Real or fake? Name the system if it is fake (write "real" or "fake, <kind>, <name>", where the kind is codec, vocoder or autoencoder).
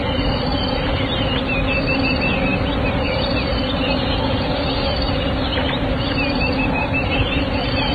real